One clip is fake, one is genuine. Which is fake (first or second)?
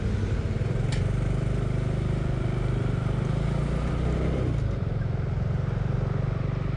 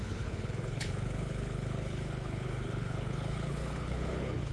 second